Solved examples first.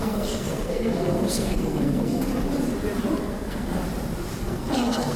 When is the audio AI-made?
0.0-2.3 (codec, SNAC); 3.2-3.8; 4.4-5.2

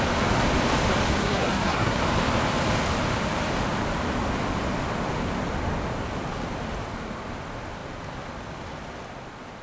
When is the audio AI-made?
1.2-2.0 (codec, SNAC)

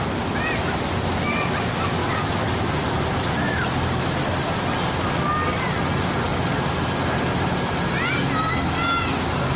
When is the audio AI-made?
none

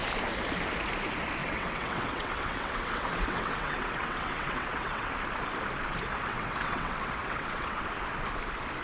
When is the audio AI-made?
1.4-5.1 (vocoder, WaveNeXt); 6.3-7.8

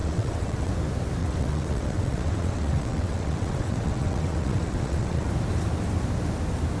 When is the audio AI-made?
0.0-0.7 (vocoder, WaveNeXt); 1.2-5.3